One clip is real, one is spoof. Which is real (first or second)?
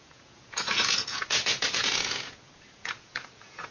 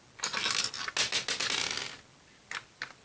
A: second